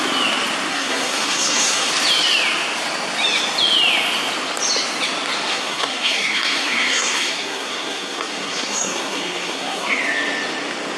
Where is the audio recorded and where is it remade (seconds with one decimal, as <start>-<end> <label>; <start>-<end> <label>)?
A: 0.0-0.7 recorded; 0.7-1.9 remade; 1.9-5.5 recorded; 5.5-10.0 remade; 10.0-11.0 recorded